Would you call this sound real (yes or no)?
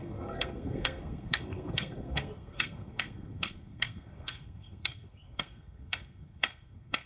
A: no